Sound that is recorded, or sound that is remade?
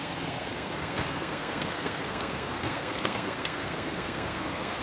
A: remade